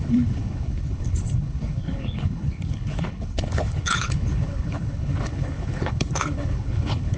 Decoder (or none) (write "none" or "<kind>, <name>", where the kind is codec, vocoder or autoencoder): codec, HILCodec